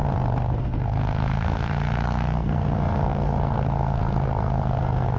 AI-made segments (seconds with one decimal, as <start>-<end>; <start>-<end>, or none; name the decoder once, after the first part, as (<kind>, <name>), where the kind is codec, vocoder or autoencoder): 0.6-5.2 (codec, SNAC)